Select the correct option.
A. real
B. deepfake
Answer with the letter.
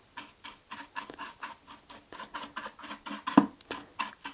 A